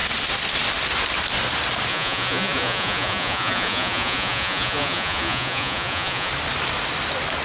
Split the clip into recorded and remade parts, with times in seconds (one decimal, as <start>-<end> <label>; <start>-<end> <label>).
0.0-1.9 recorded; 1.9-6.3 remade; 6.3-7.4 recorded